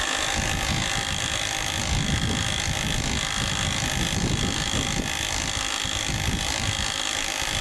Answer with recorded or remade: recorded